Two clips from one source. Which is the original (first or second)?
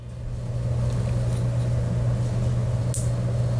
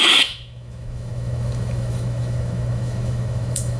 first